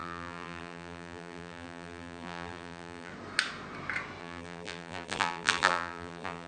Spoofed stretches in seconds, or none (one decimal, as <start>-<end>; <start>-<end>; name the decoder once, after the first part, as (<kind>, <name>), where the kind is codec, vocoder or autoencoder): 0.0-3.1 (vocoder, BigVGAN v2); 4.2-6.5